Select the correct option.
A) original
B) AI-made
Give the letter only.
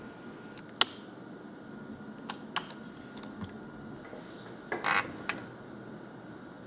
A